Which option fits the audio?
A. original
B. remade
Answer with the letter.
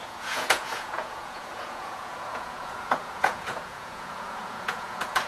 B